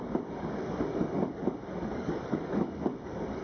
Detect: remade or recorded remade